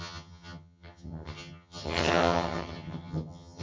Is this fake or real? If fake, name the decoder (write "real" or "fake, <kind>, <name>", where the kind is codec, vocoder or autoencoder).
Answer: fake, vocoder, HiFi-GAN